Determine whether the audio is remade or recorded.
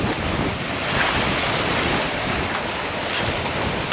recorded